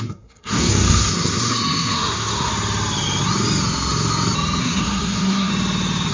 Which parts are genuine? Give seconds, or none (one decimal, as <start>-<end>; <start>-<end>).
2.5-4.6; 5.5-6.1